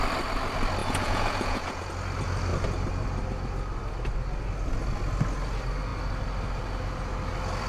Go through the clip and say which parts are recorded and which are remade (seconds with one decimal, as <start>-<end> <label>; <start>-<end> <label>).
0.0-0.8 recorded; 0.8-1.9 remade; 1.9-7.7 recorded